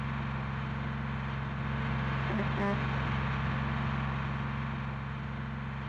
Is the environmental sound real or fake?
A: real